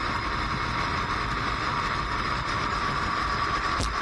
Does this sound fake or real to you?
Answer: real